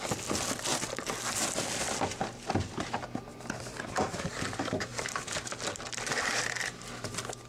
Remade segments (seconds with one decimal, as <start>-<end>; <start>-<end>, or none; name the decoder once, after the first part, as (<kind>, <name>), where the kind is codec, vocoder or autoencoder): 3.3-4.3 (vocoder, BigVGAN v2); 4.9-6.1